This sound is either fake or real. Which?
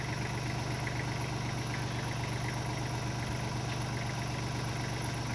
real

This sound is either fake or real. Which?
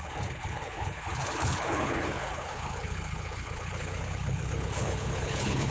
fake